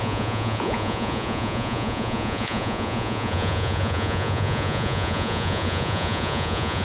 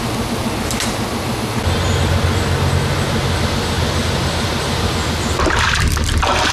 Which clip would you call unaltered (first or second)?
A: second